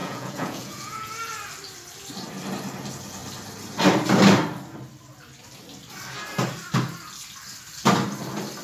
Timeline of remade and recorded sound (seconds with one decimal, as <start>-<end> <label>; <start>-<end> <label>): 0.0-1.1 remade; 1.1-8.6 recorded